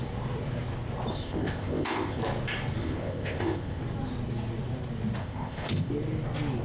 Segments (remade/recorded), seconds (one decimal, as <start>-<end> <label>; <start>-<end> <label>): 0.0-1.1 recorded; 1.1-2.2 remade; 2.2-2.8 recorded; 2.8-3.8 remade; 3.8-5.2 recorded; 5.2-5.9 remade; 5.9-6.6 recorded